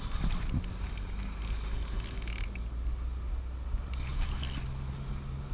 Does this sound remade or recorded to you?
recorded